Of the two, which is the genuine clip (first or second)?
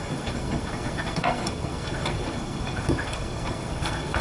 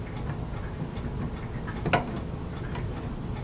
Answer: second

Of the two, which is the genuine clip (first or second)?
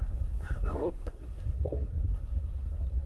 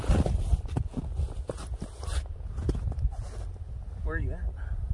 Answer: second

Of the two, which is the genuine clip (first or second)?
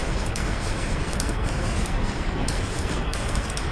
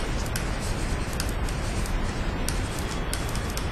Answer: second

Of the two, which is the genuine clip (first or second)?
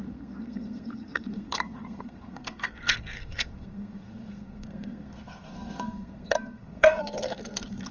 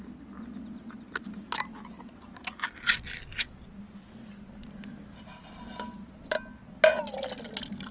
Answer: second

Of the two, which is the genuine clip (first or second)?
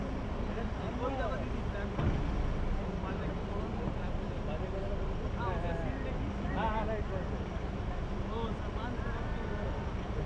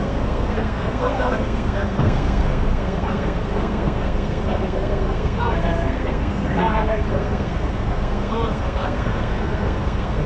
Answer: first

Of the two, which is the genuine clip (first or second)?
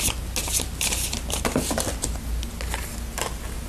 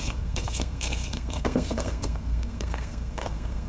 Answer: first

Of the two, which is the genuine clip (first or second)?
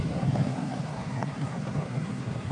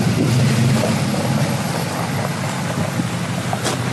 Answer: second